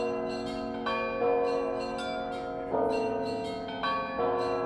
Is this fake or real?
real